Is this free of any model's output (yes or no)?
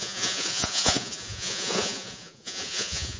no